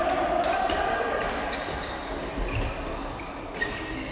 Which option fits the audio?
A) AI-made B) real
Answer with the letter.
B